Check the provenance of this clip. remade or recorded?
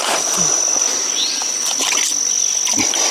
recorded